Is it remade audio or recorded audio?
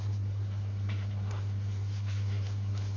remade